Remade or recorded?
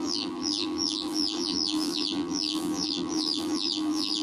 remade